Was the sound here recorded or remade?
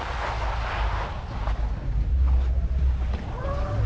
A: recorded